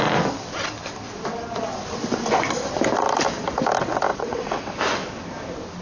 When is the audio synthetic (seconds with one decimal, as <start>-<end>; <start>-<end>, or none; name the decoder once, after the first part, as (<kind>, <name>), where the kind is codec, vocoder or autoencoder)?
4.1-4.8 (vocoder, WaveNeXt)